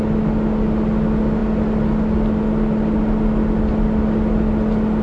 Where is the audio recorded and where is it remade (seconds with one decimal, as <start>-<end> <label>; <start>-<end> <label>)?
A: 0.0-5.0 recorded